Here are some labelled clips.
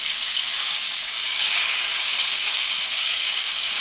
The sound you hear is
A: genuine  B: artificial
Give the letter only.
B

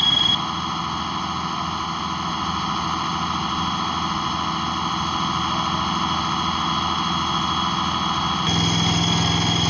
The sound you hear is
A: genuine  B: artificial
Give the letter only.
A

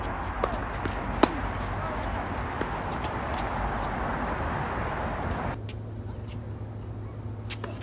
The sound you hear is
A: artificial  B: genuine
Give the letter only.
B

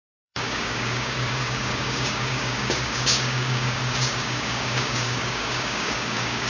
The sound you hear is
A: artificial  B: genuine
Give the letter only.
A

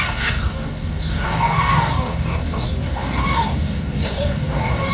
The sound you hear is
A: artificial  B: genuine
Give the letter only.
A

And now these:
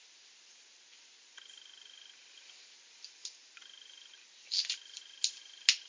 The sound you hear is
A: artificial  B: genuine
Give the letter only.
B